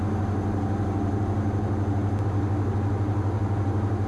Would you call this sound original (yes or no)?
yes